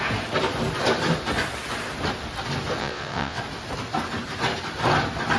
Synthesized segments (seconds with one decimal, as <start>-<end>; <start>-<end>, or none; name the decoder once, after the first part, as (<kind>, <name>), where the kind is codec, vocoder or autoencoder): 2.8-3.4 (vocoder, WaveNeXt)